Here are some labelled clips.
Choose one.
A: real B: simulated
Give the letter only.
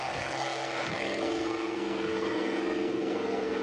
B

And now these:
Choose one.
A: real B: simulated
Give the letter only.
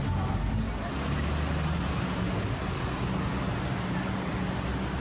A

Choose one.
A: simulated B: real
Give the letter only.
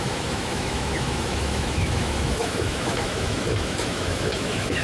A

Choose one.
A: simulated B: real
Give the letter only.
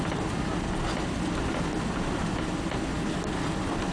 B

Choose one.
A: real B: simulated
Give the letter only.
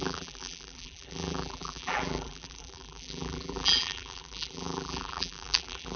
B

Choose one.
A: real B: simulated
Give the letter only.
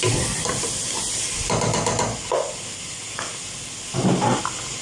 A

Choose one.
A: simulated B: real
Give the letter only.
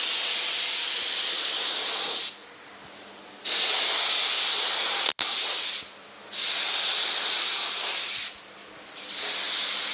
B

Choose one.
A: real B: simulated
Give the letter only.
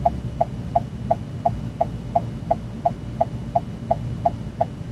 A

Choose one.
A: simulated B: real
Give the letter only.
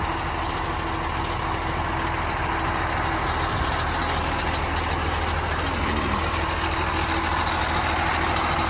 B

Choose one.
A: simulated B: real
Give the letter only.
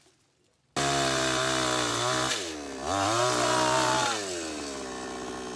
B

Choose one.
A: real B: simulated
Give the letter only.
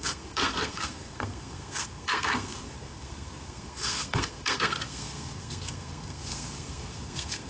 B